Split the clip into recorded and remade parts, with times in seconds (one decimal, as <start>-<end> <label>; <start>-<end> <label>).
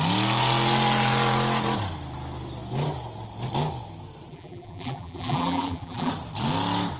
0.0-4.3 recorded; 4.3-6.1 remade; 6.1-7.0 recorded